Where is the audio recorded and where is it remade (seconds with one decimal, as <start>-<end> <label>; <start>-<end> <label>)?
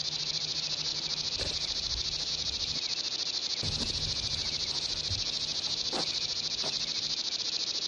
0.0-7.9 recorded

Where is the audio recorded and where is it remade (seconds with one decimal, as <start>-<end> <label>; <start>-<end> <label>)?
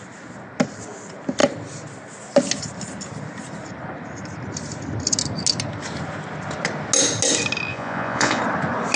0.0-7.7 recorded; 7.7-8.4 remade; 8.4-9.0 recorded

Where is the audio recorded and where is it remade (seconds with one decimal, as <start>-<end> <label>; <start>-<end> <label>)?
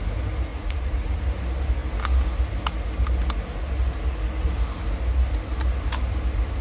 0.0-0.5 recorded; 0.5-1.2 remade; 1.2-6.6 recorded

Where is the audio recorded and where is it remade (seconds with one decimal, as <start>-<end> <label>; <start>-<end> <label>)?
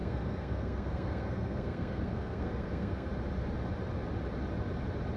0.0-3.1 remade; 3.1-5.2 recorded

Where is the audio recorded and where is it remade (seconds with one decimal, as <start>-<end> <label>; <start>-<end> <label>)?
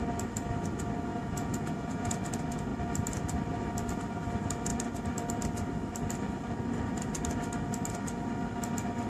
0.0-1.1 recorded; 1.1-2.2 remade; 2.2-9.1 recorded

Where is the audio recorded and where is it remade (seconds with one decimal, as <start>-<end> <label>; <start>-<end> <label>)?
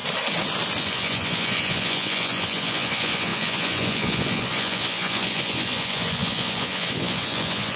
0.0-0.8 recorded; 0.8-7.8 remade